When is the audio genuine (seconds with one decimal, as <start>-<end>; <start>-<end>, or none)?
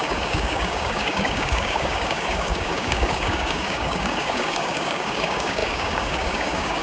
none